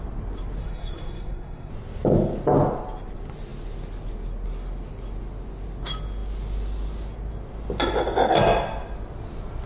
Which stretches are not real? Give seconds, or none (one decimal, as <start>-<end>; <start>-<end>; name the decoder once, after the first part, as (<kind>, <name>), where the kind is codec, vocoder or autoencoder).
0.6-1.7 (codec, SNAC)